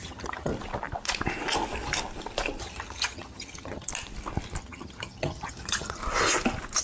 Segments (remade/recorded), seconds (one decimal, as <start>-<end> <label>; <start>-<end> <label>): 0.0-0.5 remade; 0.5-2.6 recorded; 2.6-3.9 remade; 3.9-4.6 recorded; 4.6-6.0 remade; 6.0-6.8 recorded